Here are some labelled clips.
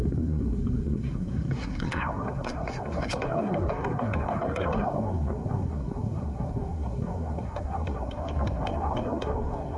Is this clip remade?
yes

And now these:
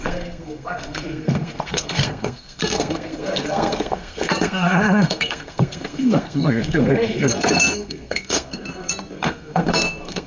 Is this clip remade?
yes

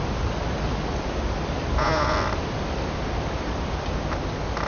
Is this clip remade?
no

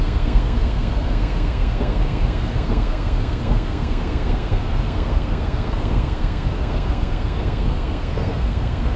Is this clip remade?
yes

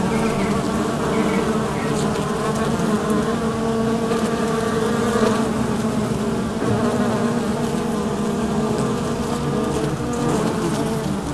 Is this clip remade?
no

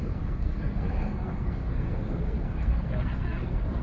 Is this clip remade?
yes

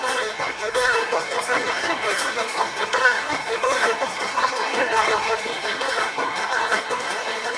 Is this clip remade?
yes